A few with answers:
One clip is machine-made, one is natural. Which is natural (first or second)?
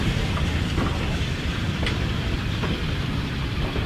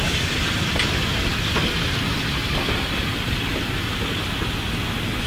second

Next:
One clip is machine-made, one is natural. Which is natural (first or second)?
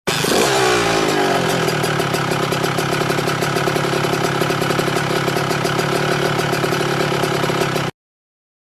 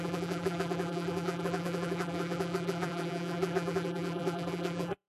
first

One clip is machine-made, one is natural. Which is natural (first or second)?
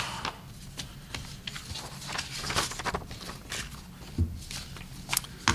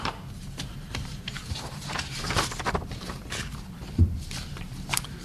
first